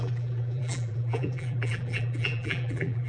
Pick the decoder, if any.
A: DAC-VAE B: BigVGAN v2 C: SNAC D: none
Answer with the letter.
B